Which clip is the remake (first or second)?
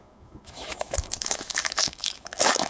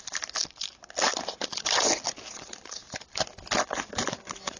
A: first